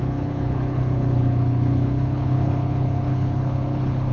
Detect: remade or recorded remade